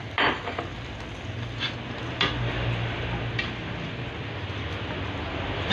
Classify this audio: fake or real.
real